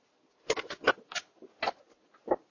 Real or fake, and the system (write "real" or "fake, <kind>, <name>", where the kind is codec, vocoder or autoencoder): real